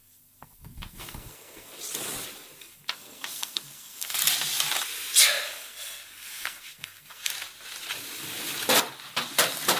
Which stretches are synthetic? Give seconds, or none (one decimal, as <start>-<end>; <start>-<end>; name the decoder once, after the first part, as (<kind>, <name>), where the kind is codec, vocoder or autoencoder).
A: 0.0-1.7 (codec, SNAC); 2.6-4.2; 5.2-7.3

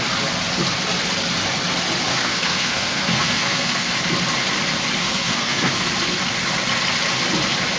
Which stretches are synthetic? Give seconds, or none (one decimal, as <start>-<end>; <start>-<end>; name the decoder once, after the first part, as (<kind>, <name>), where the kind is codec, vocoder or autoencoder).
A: 2.1-3.9 (codec, SNAC); 5.0-5.9

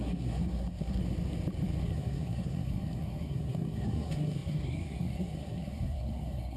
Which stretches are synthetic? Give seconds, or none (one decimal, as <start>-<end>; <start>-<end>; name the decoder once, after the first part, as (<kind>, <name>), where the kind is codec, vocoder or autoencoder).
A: 0.0-1.0 (codec, SNAC); 1.8-6.6

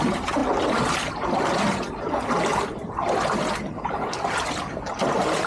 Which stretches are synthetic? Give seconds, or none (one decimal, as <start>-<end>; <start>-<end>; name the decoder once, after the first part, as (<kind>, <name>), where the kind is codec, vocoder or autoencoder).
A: none

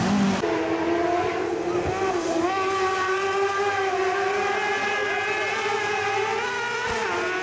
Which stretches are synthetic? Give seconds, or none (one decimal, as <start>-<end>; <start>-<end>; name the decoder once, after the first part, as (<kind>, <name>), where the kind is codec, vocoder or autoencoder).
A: none